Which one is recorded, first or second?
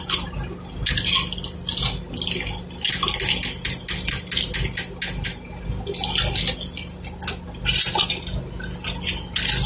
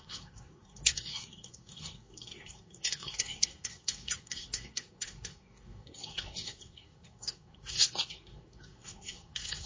first